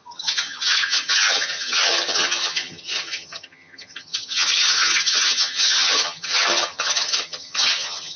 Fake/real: fake